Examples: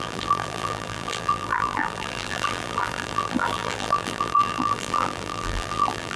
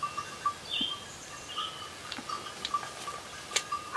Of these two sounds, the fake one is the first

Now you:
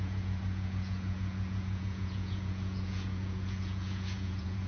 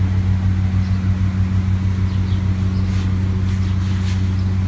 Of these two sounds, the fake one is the first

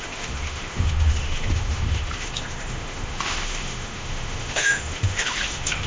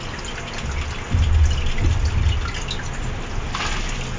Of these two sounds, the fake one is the first